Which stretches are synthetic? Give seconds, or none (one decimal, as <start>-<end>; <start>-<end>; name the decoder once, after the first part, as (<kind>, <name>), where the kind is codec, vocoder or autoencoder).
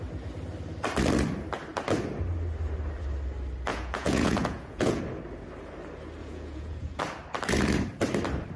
3.7-5.0 (vocoder, Vocos); 6.2-7.0